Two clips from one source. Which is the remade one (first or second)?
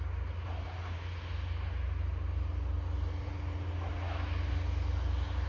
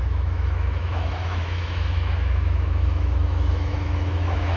second